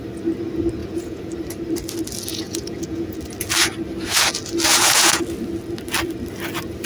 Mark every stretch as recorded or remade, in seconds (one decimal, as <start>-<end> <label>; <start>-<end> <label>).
0.0-0.8 recorded; 0.8-1.3 remade; 1.3-2.3 recorded; 2.3-3.2 remade; 3.2-4.7 recorded; 4.7-5.2 remade; 5.2-6.9 recorded